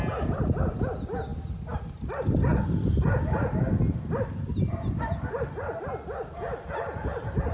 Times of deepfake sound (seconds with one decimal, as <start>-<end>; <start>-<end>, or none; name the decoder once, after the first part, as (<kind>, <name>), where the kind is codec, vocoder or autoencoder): none